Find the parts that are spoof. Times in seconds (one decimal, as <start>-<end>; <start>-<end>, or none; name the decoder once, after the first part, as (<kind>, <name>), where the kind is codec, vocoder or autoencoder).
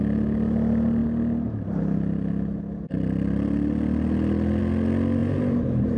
5.2-6.0 (vocoder, BigVGAN v2)